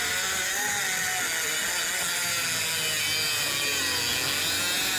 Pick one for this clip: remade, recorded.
recorded